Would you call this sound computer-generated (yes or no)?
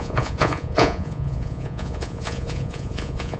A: yes